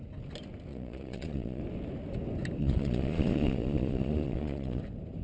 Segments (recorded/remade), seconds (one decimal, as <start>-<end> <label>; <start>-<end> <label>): 0.0-0.7 recorded; 0.7-1.6 remade; 1.6-2.6 recorded; 2.6-4.8 remade; 4.8-5.2 recorded